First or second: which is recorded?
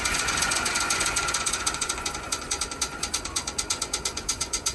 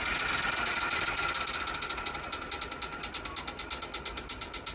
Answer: second